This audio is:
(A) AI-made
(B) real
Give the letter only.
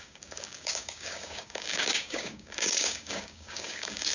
A